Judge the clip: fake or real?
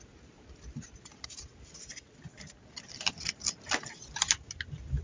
real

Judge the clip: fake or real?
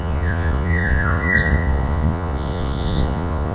fake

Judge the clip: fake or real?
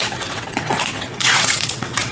fake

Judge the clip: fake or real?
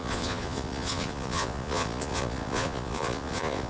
fake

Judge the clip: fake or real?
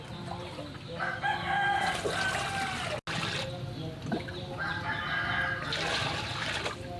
real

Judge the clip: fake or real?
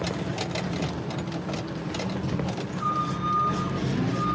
real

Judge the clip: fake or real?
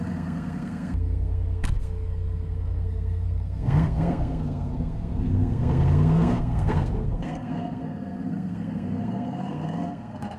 fake